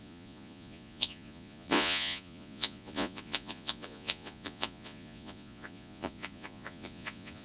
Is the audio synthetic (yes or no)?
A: yes